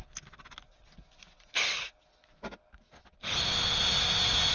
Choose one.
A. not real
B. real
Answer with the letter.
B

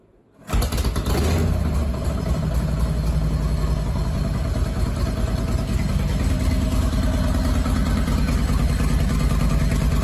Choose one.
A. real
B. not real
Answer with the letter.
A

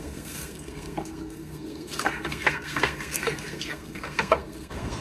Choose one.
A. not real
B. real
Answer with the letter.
A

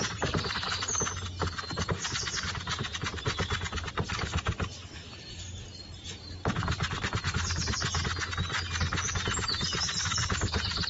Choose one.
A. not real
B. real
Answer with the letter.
B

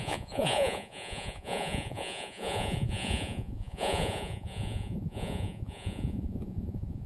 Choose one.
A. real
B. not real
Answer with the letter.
B